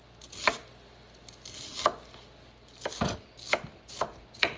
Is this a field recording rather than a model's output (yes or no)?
yes